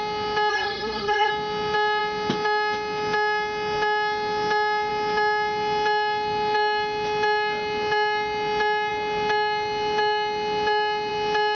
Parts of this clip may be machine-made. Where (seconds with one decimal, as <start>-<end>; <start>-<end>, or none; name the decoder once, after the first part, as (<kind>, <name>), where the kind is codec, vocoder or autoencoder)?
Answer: 0.5-1.3 (codec, SNAC)